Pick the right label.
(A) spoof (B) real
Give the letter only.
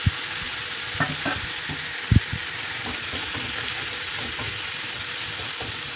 B